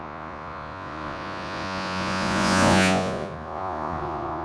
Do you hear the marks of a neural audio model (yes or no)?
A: yes